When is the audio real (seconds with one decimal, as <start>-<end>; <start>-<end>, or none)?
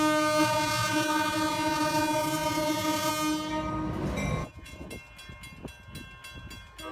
0.0-0.4; 3.1-4.4; 4.9-6.9